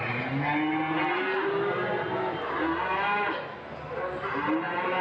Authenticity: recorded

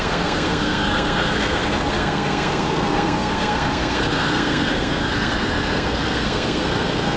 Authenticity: remade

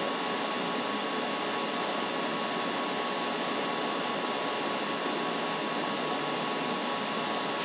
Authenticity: recorded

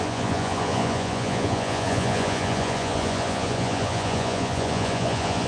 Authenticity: remade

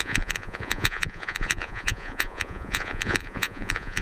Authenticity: remade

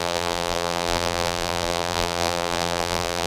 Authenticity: remade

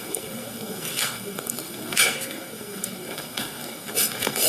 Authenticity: remade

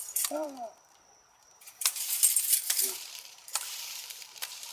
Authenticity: remade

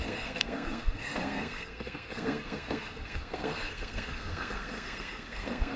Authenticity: remade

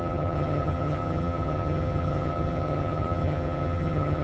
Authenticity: remade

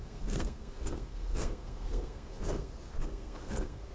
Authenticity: remade